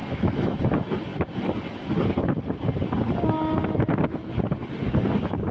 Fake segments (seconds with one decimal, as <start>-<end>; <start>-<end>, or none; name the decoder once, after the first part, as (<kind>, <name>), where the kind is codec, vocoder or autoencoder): 0.0-0.6 (autoencoder, DAC-VAE)